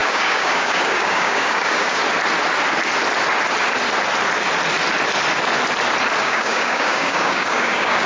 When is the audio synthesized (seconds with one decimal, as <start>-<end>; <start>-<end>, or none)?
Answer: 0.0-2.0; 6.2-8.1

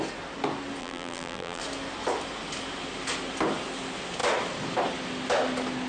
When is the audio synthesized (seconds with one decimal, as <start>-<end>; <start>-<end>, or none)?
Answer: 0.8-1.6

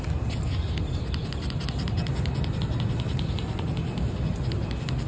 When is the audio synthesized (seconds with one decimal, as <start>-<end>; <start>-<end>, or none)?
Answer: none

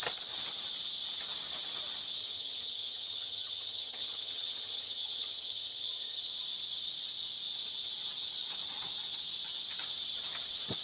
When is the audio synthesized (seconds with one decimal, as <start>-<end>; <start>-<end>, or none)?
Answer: 2.2-6.3

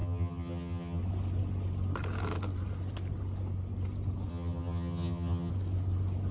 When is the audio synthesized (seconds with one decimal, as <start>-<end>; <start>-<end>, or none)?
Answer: 0.0-1.0; 4.3-5.5